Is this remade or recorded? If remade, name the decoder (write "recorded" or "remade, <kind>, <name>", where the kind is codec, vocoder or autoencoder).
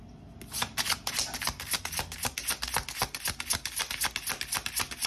recorded